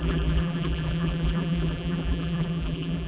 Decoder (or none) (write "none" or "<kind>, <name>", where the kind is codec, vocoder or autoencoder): vocoder, BigVGAN v2